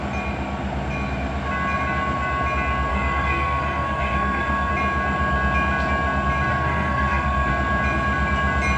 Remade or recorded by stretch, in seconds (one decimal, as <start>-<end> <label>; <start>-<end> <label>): 0.0-2.9 recorded; 2.9-4.7 remade; 4.7-6.5 recorded; 6.5-7.5 remade; 7.5-8.8 recorded